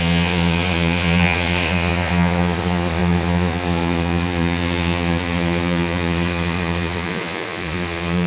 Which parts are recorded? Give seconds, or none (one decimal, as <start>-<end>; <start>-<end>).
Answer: none